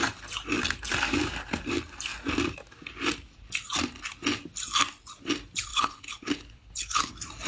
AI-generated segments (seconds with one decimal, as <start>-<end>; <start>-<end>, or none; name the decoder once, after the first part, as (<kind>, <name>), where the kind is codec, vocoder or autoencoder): 5.7-7.1 (codec, HILCodec)

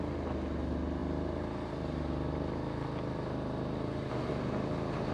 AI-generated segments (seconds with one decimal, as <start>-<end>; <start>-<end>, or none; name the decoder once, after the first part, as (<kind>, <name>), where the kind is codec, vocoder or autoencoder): none

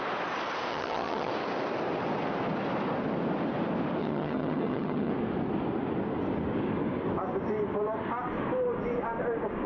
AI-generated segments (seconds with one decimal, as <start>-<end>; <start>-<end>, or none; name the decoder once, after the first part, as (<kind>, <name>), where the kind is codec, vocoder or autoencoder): 0.7-1.3 (vocoder, HiFi-GAN); 4.0-5.1

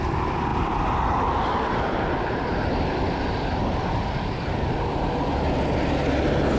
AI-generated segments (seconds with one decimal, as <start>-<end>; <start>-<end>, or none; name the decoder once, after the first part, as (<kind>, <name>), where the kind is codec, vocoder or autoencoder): none

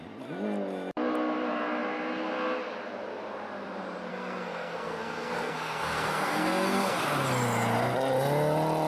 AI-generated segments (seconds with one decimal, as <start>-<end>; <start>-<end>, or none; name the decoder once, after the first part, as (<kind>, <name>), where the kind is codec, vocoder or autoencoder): 4.1-7.0 (codec, SNAC)

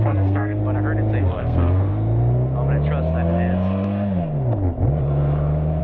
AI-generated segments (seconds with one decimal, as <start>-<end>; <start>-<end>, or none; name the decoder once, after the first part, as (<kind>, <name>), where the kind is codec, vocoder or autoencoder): 0.0-0.6 (codec, SNAC); 1.2-1.9